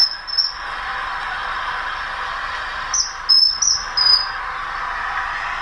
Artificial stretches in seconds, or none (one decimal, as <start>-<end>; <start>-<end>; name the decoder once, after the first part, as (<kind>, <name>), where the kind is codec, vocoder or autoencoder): 1.4-4.8 (vocoder, BigVGAN v2)